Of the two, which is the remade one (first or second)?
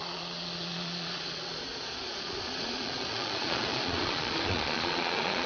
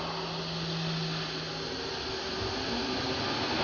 first